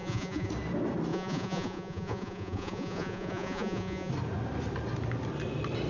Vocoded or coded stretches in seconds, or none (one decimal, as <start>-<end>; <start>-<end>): 0.0-0.5; 1.1-4.1